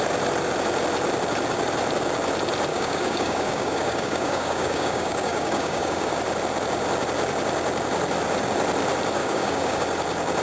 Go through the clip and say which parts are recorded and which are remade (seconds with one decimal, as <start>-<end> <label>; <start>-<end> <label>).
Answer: 0.0-2.7 recorded; 2.7-6.1 remade; 6.1-9.2 recorded; 9.2-9.8 remade; 9.8-10.4 recorded